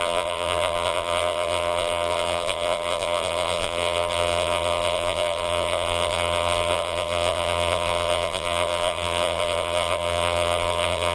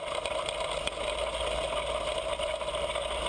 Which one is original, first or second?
second